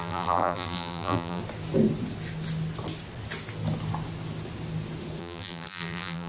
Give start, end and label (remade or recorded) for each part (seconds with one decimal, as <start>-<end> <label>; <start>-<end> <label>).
0.0-1.4 remade; 1.4-5.2 recorded; 5.2-6.3 remade